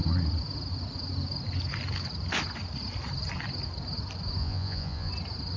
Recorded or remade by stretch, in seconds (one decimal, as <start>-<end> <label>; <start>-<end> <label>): 0.0-4.4 recorded; 4.4-5.1 remade; 5.1-5.6 recorded